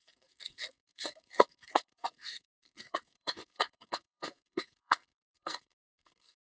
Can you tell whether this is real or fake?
fake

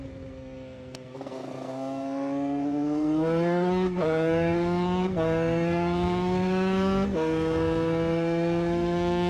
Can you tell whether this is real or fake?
fake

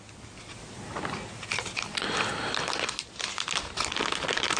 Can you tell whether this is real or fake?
real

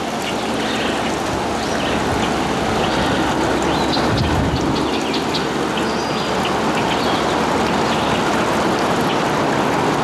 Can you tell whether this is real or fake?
real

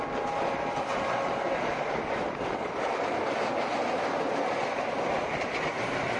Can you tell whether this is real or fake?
real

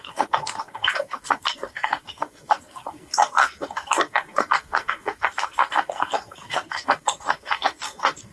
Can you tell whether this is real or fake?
fake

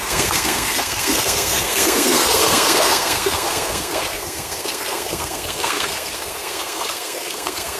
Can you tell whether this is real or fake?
fake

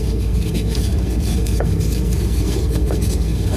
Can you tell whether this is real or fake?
fake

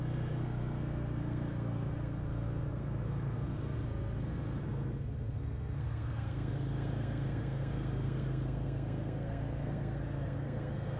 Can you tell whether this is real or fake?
fake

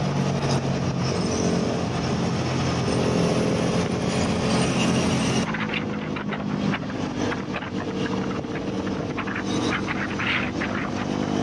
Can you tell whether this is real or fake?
real